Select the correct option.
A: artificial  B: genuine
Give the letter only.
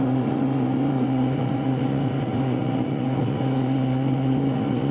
A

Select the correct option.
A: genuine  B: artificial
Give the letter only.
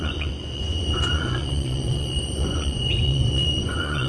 B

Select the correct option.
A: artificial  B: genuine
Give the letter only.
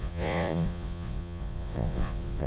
A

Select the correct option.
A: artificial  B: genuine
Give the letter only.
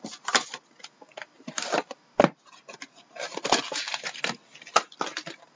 B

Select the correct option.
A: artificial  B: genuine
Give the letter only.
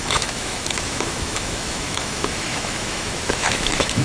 A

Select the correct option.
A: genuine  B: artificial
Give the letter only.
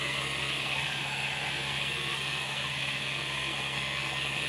B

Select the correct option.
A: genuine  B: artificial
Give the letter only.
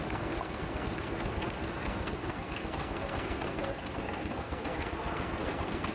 B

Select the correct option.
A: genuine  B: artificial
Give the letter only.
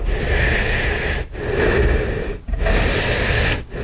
A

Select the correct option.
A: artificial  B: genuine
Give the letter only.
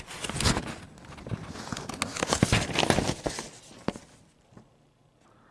B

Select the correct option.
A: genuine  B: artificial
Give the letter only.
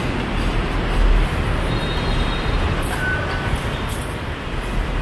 A